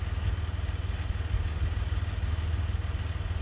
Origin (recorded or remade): recorded